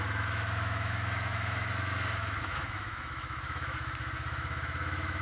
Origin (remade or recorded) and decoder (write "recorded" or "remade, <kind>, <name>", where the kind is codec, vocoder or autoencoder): remade, autoencoder, DAC-VAE